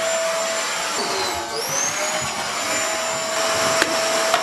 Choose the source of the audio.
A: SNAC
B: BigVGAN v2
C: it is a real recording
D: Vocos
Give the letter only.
C